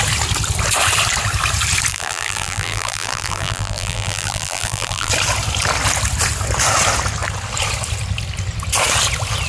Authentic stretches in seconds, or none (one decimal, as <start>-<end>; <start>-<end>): 0.0-1.9; 5.1-9.5